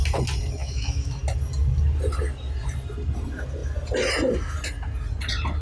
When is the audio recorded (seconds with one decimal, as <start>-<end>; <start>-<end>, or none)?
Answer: 0.0-0.6; 1.2-5.6